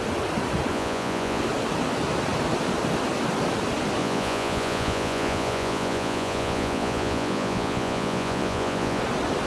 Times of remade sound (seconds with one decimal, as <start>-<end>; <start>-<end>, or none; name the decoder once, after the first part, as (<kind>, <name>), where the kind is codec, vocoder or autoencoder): 0.7-1.4 (vocoder, Vocos); 4.0-9.0